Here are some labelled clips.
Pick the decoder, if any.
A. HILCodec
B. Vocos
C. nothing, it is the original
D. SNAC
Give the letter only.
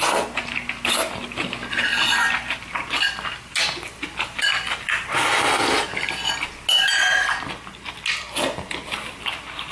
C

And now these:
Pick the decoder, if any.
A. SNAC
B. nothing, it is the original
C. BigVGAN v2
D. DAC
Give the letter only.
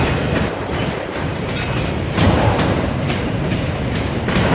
C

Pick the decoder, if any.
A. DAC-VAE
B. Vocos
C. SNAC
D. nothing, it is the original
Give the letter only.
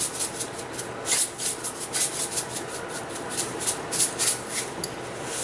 D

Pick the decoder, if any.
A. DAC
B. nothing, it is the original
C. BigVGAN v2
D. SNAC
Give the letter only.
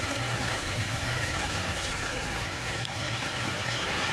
D